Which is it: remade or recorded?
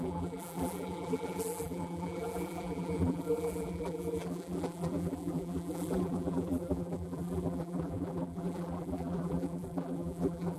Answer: remade